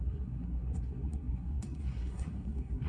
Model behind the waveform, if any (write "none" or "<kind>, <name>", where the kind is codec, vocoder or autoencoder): codec, SNAC